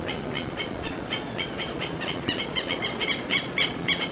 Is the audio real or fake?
fake